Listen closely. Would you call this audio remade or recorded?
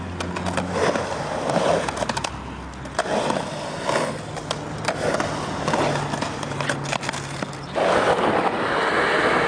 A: recorded